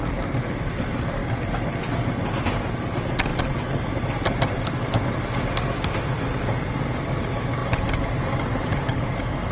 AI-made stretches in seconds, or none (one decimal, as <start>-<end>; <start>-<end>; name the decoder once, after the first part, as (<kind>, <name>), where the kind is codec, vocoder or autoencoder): 7.6-8.6 (vocoder, BigVGAN v2)